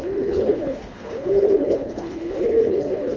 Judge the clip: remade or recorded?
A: remade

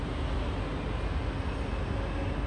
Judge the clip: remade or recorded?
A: recorded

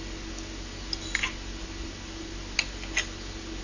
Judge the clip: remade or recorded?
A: recorded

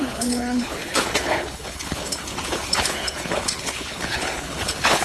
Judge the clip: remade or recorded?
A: remade